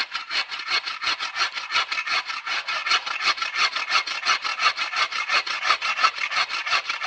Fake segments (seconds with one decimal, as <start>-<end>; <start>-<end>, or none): 2.8-3.7; 6.6-7.1